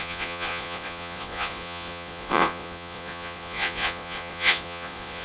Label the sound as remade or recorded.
remade